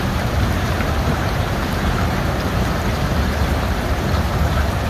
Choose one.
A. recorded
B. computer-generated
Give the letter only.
B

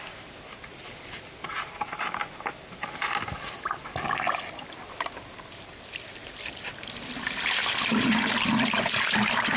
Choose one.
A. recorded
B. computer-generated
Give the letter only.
A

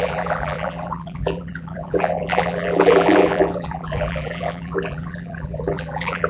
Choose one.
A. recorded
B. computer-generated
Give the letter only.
B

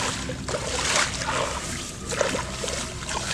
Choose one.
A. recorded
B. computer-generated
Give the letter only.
A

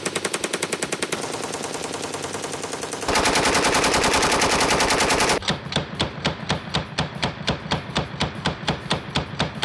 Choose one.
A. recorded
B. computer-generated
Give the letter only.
B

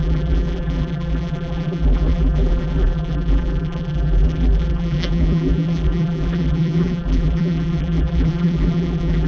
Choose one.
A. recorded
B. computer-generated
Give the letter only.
B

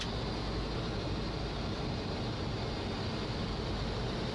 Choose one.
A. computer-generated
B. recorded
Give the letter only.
B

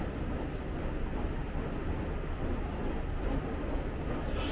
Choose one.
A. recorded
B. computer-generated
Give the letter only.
A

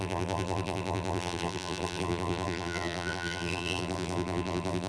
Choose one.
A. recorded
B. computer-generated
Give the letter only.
B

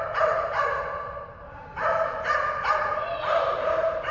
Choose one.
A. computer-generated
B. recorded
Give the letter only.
B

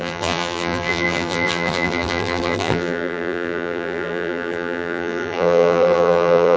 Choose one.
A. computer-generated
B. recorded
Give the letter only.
A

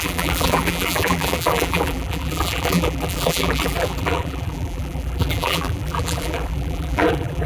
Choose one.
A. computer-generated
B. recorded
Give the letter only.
A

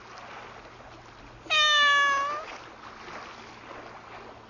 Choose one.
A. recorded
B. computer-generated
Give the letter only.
A